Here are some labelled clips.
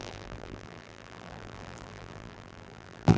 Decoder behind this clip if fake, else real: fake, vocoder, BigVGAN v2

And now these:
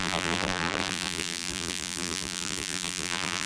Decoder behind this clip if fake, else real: fake, vocoder, BigVGAN v2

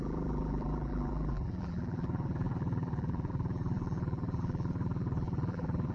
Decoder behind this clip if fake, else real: fake, vocoder, BigVGAN v2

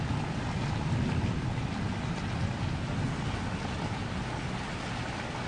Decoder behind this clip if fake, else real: real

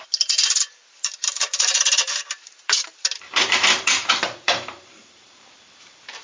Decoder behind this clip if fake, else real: fake, vocoder, BigVGAN v2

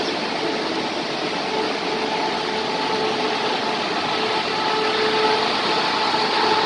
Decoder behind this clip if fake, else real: real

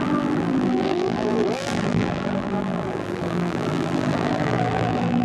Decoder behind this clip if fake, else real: fake, vocoder, BigVGAN v2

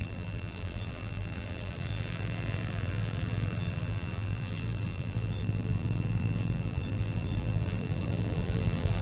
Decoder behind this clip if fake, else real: fake, vocoder, BigVGAN v2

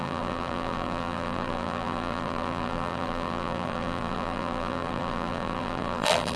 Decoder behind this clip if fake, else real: fake, vocoder, BigVGAN v2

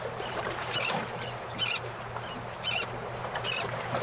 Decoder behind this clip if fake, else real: fake, vocoder, BigVGAN v2